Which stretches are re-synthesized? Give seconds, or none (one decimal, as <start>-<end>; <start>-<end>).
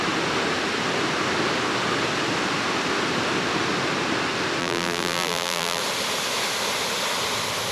4.6-5.8